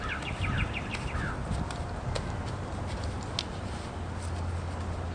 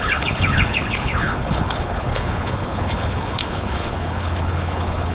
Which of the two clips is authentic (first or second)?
first